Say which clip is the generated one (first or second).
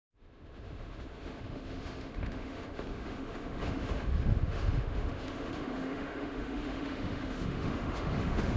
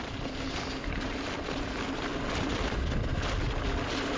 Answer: first